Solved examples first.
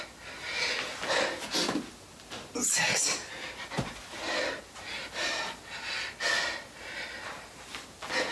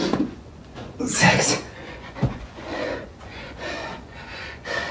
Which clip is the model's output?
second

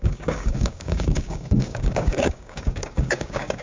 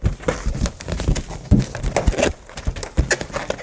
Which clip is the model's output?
first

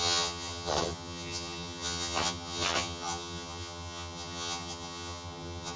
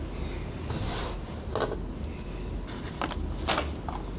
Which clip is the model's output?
first